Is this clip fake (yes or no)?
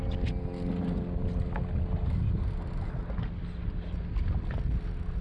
no